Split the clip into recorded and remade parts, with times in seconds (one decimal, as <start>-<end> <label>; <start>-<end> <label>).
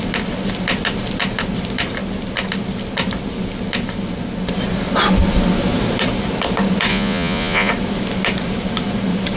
0.0-6.9 recorded; 6.9-7.7 remade; 7.7-9.4 recorded